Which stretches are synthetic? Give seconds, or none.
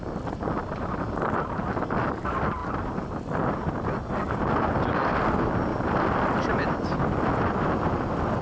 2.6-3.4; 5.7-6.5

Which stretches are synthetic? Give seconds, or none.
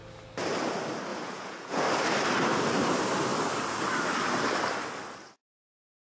1.1-1.8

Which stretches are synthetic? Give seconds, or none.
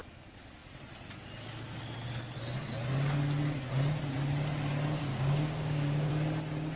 5.1-6.1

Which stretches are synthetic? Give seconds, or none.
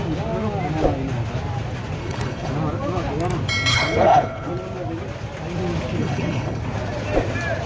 2.0-2.5; 3.7-4.5; 6.0-6.6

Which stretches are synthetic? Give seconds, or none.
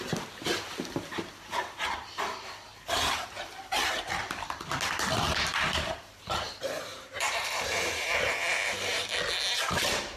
2.7-3.3; 5.5-6.2; 6.9-9.1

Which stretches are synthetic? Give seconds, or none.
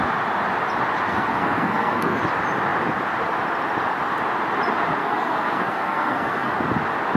1.1-2.2; 5.0-6.5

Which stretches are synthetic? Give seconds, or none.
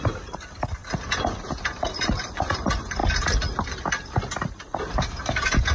0.0-0.8; 1.7-3.0; 4.9-5.7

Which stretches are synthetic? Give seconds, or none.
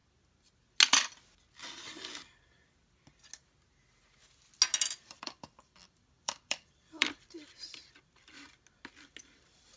5.0-7.8; 9.2-9.8